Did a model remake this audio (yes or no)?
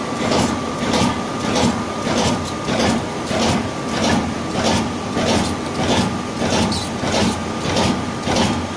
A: no